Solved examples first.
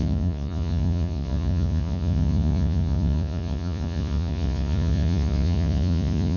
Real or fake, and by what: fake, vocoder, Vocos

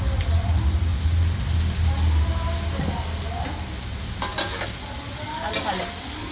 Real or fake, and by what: real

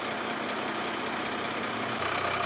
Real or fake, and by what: real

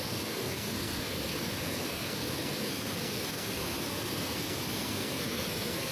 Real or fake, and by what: fake, codec, SNAC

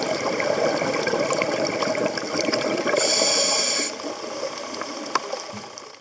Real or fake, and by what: real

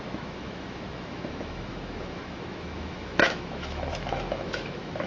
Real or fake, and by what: fake, autoencoder, DAC-VAE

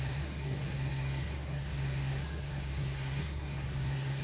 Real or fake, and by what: fake, codec, SNAC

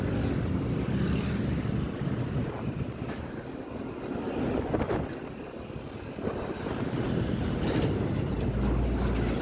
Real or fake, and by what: real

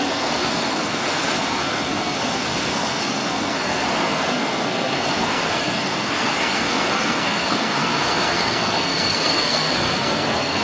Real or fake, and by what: fake, codec, SNAC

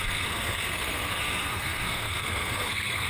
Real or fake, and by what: fake, codec, SNAC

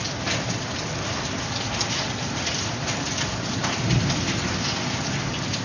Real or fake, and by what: real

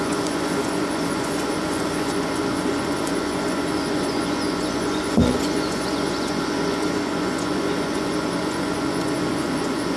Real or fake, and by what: fake, vocoder, Vocos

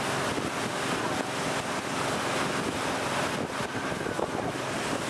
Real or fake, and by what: real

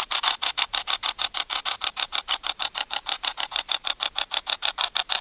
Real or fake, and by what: fake, vocoder, BigVGAN v2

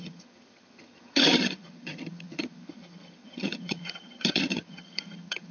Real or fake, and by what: fake, vocoder, HiFi-GAN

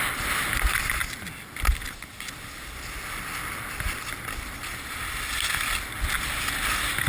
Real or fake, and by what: real